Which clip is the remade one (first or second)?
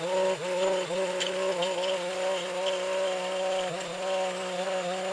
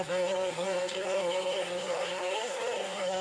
second